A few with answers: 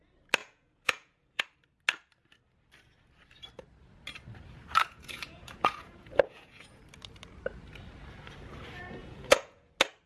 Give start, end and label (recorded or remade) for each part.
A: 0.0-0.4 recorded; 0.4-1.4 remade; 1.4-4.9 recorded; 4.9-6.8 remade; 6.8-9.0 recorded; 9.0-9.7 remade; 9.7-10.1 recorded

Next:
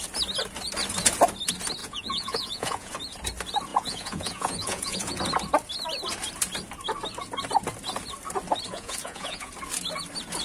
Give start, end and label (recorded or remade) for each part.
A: 0.0-1.8 recorded; 1.8-2.9 remade; 2.9-3.7 recorded; 3.7-5.2 remade; 5.2-8.7 recorded; 8.7-9.5 remade; 9.5-10.4 recorded

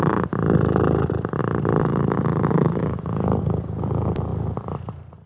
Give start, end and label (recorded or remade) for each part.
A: 0.0-5.3 recorded